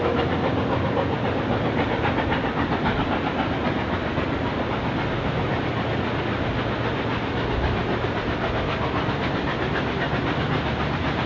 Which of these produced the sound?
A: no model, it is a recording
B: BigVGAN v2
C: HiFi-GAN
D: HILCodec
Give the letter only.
A